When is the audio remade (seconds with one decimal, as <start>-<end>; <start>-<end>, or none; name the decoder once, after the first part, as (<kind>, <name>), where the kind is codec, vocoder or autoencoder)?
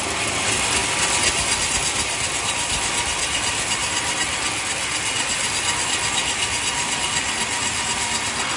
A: none